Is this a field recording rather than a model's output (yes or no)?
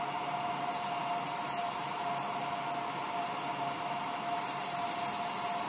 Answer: yes